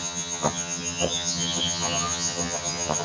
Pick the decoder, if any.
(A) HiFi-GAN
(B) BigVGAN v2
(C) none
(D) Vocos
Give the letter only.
A